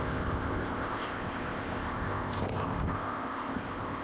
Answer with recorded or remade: remade